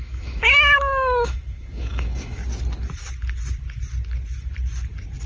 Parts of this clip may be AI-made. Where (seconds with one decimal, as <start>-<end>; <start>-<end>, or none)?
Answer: 0.0-2.4